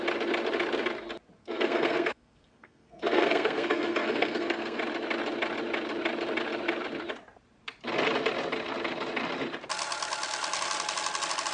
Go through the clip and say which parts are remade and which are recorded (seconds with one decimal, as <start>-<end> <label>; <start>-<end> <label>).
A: 0.0-1.4 recorded; 1.4-4.8 remade; 4.8-11.5 recorded